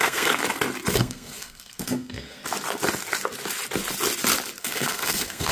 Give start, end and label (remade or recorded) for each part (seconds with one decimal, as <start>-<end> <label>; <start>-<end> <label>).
0.0-0.4 remade; 0.4-1.0 recorded; 1.0-2.4 remade; 2.4-4.6 recorded; 4.6-5.5 remade